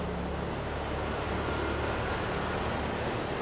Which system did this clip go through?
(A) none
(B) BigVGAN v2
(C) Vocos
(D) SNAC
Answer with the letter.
A